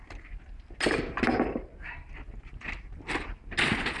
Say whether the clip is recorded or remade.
recorded